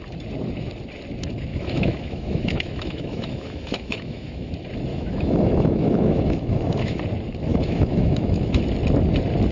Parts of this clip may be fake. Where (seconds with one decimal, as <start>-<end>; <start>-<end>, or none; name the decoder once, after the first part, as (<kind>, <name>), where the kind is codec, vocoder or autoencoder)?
1.5-4.5 (autoencoder, DAC-VAE); 4.9-7.0; 7.5-8.6